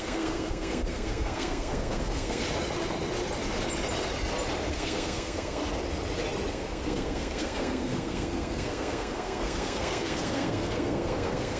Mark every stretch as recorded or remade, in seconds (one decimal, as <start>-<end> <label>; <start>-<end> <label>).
0.0-2.4 remade; 2.4-4.7 recorded; 4.7-5.6 remade; 5.6-6.5 recorded; 6.5-11.6 remade